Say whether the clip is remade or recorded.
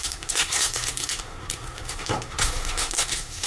remade